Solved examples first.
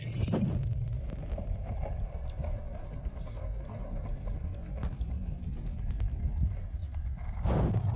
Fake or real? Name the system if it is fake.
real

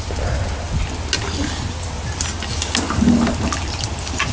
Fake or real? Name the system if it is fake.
real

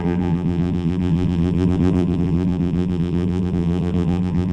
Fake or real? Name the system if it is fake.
fake, vocoder, BigVGAN v2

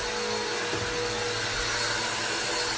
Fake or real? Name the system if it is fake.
real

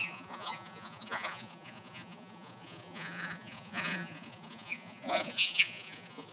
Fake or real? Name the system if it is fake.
fake, vocoder, Vocos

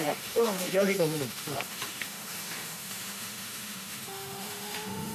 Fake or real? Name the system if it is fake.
fake, autoencoder, DAC-VAE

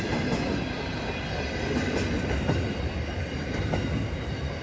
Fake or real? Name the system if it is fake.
real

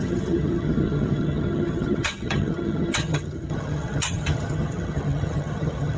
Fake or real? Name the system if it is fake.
fake, vocoder, HiFi-GAN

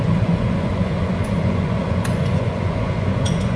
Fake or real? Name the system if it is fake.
fake, vocoder, Vocos